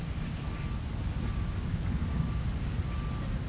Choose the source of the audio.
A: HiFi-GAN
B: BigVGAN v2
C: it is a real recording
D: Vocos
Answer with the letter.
C